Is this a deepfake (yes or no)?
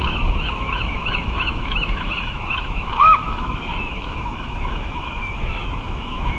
yes